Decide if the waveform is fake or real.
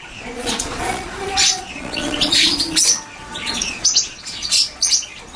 fake